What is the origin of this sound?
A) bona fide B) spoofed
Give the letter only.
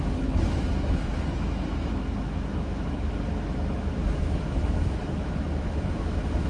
B